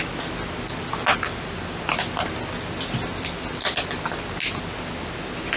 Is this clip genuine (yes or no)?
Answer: yes